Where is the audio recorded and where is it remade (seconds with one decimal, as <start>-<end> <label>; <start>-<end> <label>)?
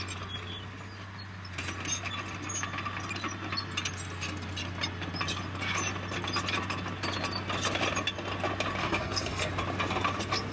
0.0-8.8 recorded; 8.8-9.5 remade; 9.5-10.5 recorded